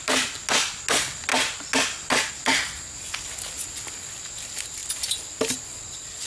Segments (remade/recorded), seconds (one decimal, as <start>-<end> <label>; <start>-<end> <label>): 0.0-6.3 recorded